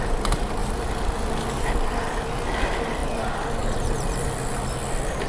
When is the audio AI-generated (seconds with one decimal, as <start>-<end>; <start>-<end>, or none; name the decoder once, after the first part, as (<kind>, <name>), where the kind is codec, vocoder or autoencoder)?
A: none